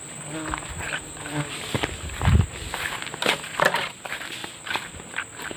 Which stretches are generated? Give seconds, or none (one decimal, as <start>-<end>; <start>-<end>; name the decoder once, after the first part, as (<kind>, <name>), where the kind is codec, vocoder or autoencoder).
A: 4.4-5.0 (vocoder, BigVGAN v2)